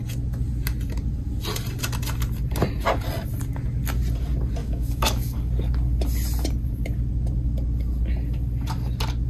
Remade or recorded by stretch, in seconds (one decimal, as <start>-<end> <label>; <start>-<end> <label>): 0.0-4.6 recorded; 4.6-5.5 remade; 5.5-9.3 recorded